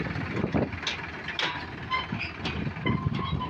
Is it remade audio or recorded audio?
recorded